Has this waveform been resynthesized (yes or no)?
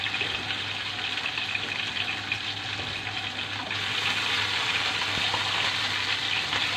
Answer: no